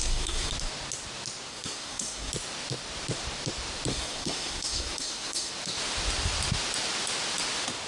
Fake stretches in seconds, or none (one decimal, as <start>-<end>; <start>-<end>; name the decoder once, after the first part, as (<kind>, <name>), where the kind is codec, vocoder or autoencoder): 0.0-0.5 (codec, SNAC); 1.5-2.3; 3.9-5.5